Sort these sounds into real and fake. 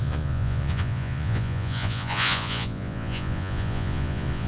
fake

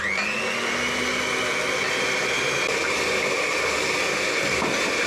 real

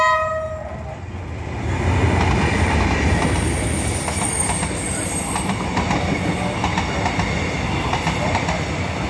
real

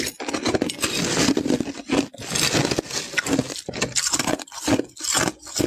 real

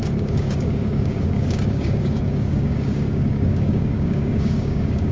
fake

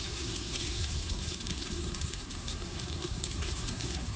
fake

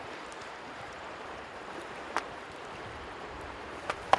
fake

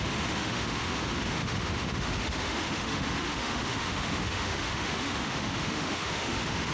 fake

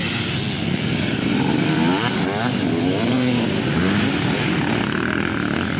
real